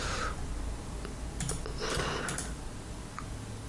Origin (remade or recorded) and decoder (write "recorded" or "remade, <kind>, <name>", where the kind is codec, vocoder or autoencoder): recorded